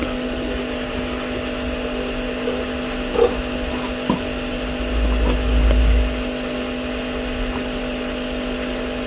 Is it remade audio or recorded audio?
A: recorded